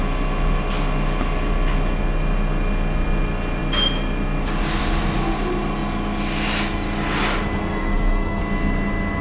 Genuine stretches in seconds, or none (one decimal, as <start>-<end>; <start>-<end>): 0.0-7.6; 8.4-9.2